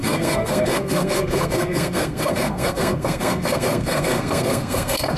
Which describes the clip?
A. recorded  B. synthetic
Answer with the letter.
B